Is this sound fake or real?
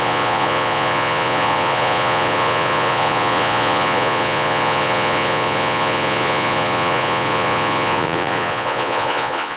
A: fake